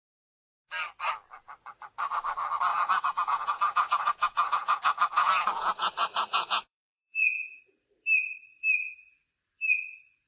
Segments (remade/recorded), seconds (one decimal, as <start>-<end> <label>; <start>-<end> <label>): 0.0-2.7 recorded; 2.7-7.6 remade; 7.6-10.3 recorded